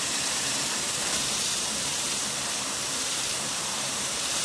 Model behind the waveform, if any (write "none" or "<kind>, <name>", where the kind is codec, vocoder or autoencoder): vocoder, BigVGAN v2